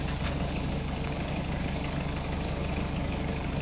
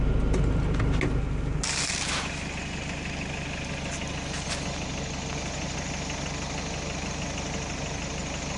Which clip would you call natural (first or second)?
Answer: second